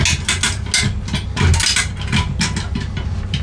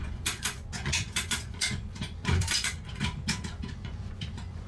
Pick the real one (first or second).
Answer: first